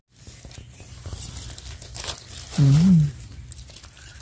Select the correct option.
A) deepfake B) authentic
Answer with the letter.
B